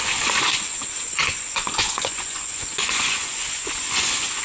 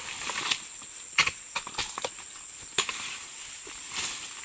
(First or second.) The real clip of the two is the second